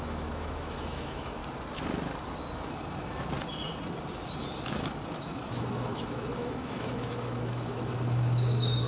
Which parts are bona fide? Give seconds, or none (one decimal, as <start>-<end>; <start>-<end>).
1.4-5.2